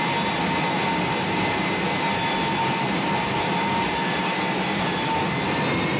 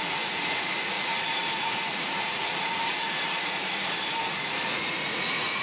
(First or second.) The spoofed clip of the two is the second